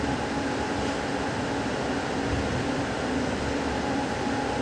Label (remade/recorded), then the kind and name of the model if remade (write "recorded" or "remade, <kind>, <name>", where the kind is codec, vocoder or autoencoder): recorded